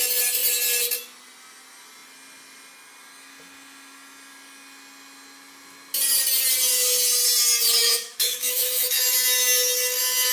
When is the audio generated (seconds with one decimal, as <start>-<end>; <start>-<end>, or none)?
7.8-9.0